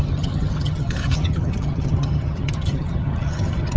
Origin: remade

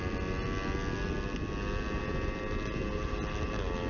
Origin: recorded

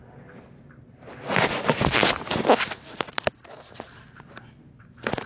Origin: recorded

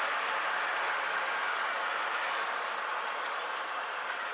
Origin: recorded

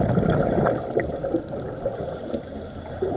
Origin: recorded